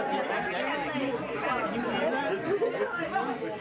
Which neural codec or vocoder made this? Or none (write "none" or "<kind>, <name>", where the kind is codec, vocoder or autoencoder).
none